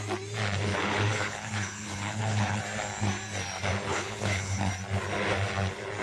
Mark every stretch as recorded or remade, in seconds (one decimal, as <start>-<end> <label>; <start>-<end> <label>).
0.0-0.7 recorded; 0.7-2.6 remade; 2.6-3.9 recorded; 3.9-4.7 remade; 4.7-6.0 recorded